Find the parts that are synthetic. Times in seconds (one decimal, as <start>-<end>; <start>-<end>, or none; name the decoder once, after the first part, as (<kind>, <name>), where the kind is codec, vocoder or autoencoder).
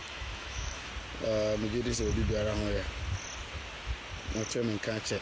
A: 0.0-0.9 (autoencoder, DAC-VAE)